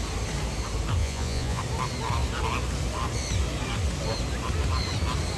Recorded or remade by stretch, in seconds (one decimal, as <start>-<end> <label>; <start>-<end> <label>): 0.0-1.0 recorded; 1.0-1.6 remade; 1.6-5.4 recorded